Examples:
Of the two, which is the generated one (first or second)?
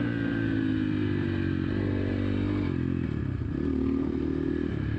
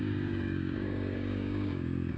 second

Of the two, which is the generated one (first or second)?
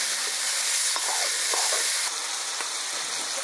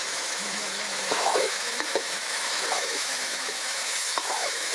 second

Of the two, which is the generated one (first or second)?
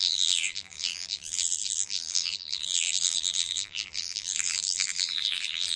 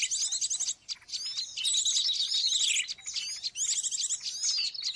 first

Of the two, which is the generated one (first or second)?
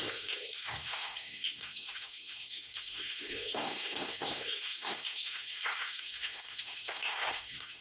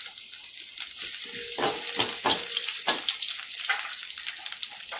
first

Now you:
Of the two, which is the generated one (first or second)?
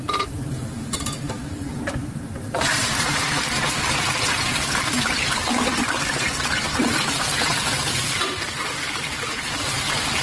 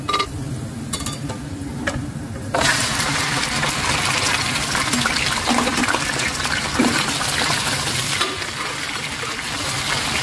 first